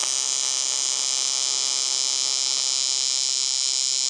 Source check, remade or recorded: recorded